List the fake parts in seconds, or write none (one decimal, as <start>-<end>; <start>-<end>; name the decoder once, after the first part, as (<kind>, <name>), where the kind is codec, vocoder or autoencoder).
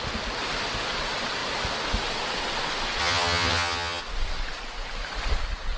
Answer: 3.0-4.0 (vocoder, HiFi-GAN)